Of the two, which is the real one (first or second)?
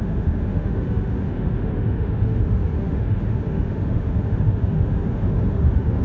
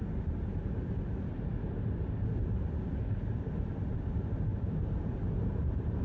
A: second